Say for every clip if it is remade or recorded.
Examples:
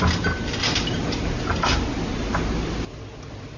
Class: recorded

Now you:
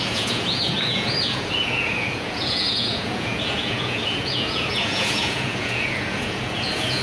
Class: remade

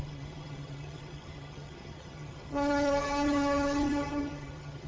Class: remade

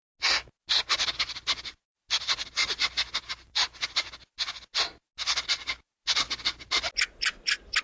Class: recorded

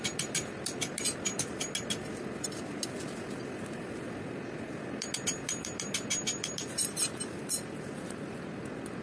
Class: recorded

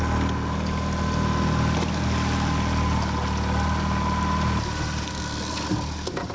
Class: recorded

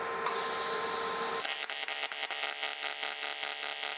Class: recorded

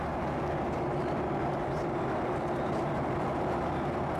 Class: recorded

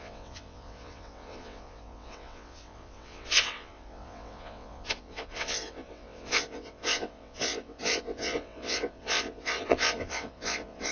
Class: remade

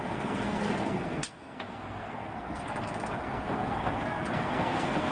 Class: remade